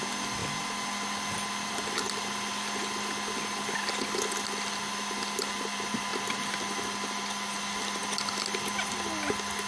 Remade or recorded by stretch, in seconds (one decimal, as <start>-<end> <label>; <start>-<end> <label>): 0.0-9.7 recorded